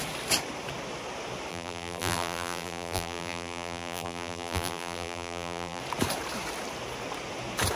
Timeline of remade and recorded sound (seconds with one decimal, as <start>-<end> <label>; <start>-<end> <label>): 0.0-1.5 recorded; 1.5-5.8 remade; 5.8-7.8 recorded